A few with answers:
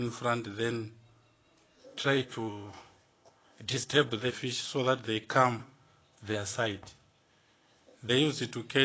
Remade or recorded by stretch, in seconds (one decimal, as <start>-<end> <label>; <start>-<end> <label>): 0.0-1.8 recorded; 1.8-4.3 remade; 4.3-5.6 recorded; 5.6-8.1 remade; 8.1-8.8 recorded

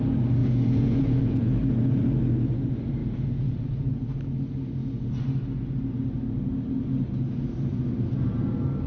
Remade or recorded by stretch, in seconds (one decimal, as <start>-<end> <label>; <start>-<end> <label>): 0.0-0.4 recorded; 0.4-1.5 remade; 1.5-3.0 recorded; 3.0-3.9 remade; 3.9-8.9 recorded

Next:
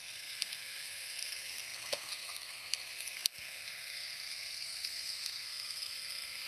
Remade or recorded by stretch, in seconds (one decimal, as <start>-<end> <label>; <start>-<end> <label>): 0.0-6.5 remade

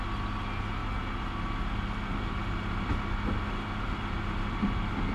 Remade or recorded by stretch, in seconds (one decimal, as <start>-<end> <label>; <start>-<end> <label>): 0.0-5.1 recorded

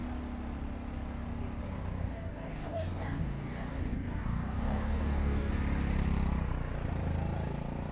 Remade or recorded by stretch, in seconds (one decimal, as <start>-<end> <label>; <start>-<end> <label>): 0.0-2.0 recorded; 2.0-5.5 remade; 5.5-7.9 recorded

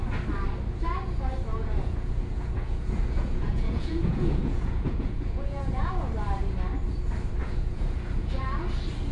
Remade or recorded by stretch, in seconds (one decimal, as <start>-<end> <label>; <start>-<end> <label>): 0.0-1.5 recorded; 1.5-5.9 remade; 5.9-7.4 recorded; 7.4-8.4 remade; 8.4-9.1 recorded

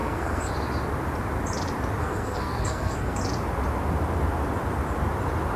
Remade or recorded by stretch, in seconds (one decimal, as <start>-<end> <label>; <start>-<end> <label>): 0.0-0.5 remade; 0.5-2.0 recorded; 2.0-3.2 remade; 3.2-5.6 recorded